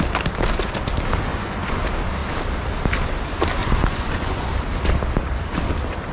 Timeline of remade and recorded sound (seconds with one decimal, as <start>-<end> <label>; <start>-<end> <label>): 0.0-1.3 recorded; 1.3-1.8 remade; 1.8-3.6 recorded; 3.6-4.5 remade; 4.5-6.1 recorded